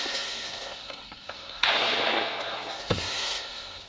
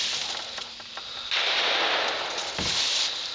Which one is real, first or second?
second